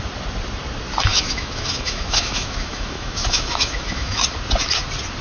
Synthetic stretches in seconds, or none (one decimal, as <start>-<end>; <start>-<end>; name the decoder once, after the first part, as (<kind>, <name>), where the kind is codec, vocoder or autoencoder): 1.1-4.2 (autoencoder, DAC-VAE)